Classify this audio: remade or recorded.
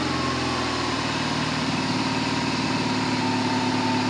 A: recorded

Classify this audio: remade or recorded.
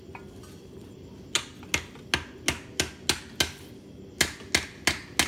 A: recorded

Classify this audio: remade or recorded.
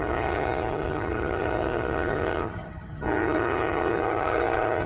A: remade